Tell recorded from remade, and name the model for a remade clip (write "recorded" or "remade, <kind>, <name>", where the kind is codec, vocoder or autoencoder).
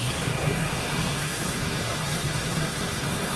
remade, codec, SNAC